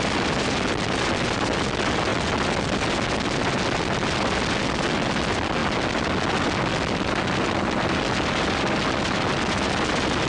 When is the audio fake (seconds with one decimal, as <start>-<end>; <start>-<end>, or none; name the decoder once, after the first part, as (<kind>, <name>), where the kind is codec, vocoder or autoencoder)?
none